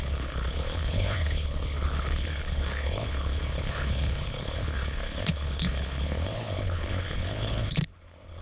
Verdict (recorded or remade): remade